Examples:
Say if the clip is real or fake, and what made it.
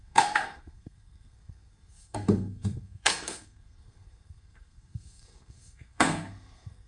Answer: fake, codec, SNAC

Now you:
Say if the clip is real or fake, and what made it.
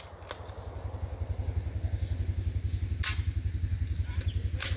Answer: real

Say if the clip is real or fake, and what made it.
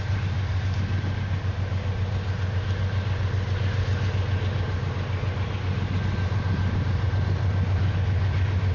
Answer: real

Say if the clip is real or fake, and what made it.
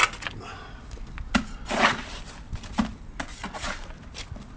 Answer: real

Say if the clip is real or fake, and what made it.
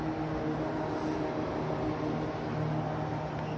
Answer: real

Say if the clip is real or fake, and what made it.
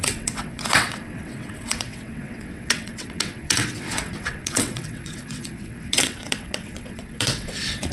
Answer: fake, vocoder, WaveNeXt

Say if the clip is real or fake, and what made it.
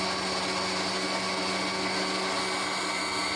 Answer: real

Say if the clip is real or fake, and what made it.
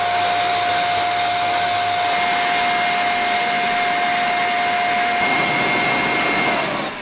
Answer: real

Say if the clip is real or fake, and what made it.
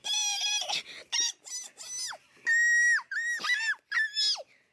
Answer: real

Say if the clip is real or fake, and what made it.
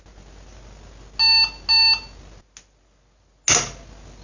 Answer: real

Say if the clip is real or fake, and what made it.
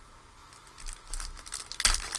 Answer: real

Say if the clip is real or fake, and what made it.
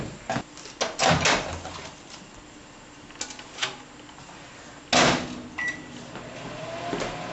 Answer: real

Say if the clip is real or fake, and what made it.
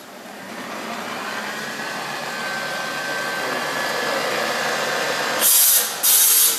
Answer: real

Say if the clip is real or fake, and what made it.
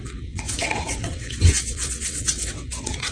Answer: fake, vocoder, WaveNeXt